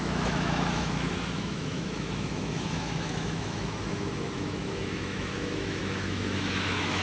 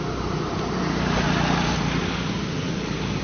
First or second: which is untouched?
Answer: second